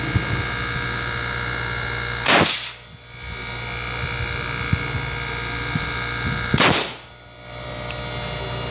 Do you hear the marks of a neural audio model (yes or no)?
no